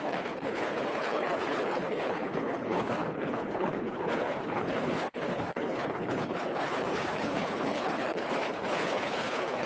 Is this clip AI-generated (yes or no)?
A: yes